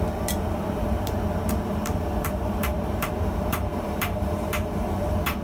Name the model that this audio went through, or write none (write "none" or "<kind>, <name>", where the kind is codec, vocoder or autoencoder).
vocoder, BigVGAN v2